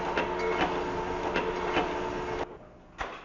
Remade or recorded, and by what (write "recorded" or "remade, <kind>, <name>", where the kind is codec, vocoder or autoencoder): recorded